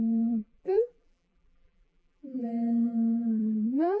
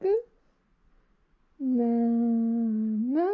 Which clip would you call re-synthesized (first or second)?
first